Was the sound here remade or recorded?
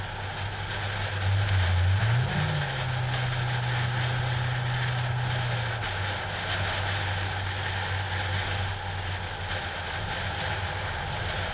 recorded